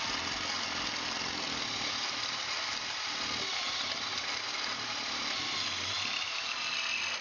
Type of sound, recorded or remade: recorded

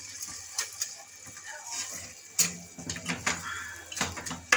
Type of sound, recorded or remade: recorded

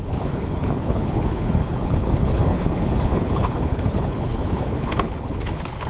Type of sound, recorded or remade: remade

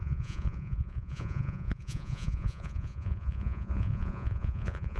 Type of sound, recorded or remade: remade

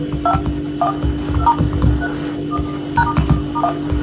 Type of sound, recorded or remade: recorded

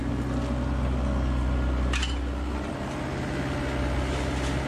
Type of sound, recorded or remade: recorded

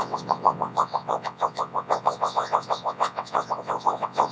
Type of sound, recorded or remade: remade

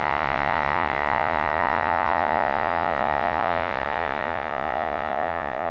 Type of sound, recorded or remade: remade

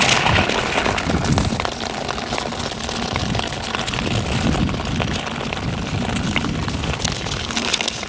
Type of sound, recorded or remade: recorded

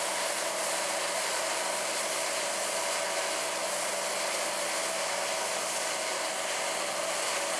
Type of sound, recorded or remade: recorded